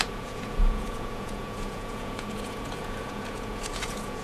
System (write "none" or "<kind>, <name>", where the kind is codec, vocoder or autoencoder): vocoder, Vocos